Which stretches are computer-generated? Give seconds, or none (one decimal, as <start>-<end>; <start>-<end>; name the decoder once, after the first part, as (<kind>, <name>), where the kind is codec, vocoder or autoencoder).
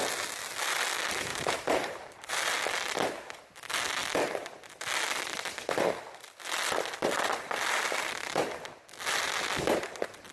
1.3-2.3 (vocoder, BigVGAN v2)